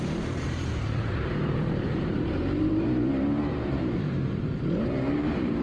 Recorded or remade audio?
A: remade